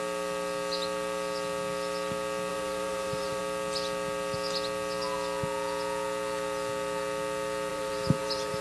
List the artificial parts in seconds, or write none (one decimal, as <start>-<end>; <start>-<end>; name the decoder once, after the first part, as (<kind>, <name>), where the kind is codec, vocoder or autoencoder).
2.5-3.4 (vocoder, BigVGAN v2); 7.7-8.6